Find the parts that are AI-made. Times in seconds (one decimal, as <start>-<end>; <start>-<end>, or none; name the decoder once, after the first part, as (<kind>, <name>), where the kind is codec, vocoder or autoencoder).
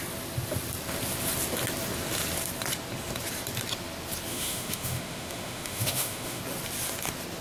4.3-6.4 (autoencoder, DAC-VAE)